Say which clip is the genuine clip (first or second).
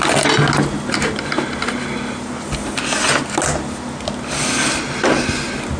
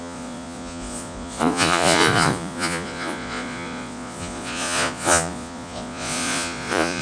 first